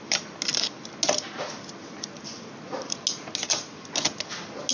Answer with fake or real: real